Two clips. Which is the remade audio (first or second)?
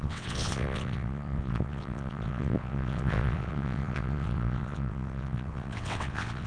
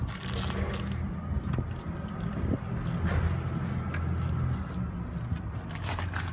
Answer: first